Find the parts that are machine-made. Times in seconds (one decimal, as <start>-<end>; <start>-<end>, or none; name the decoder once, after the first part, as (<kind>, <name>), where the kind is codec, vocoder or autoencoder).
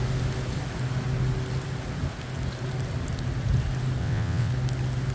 4.0-4.5 (vocoder, WaveNeXt)